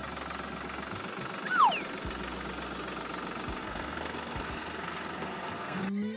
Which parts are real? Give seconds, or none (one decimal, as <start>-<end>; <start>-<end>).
0.0-3.6; 5.8-6.2